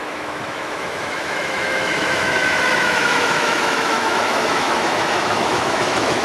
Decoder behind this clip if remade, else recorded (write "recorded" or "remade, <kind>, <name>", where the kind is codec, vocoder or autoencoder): remade, autoencoder, DAC-VAE